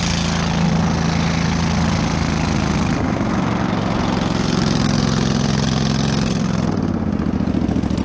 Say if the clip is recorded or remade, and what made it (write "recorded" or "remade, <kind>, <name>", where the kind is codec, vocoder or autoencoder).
recorded